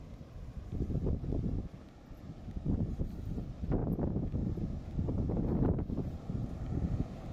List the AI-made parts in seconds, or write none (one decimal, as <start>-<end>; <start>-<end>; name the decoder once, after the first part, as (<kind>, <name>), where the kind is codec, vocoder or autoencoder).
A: none